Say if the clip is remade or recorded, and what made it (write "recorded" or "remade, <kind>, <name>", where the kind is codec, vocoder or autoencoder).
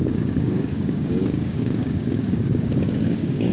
remade, codec, DAC